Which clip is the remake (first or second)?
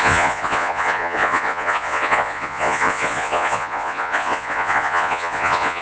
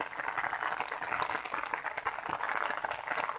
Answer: first